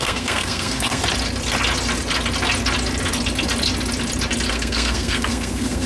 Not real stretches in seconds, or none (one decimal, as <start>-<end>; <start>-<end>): 0.0-1.0; 4.5-5.9